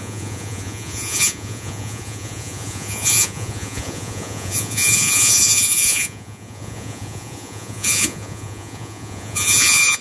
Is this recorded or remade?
remade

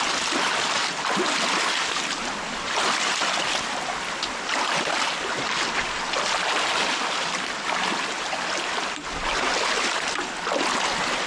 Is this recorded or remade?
recorded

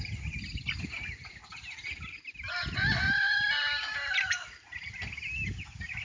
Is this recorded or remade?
recorded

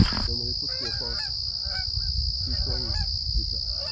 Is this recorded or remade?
recorded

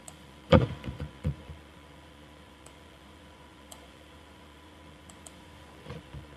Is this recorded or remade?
remade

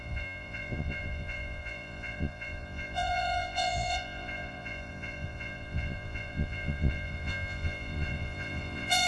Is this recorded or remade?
remade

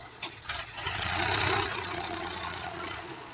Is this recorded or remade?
remade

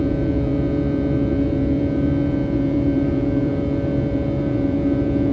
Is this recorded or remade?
remade